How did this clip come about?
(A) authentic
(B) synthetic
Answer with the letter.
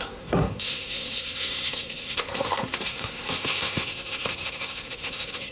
B